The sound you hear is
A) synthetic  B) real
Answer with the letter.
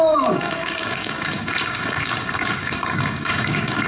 A